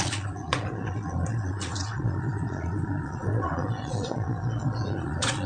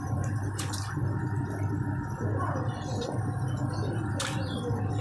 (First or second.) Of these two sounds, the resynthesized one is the first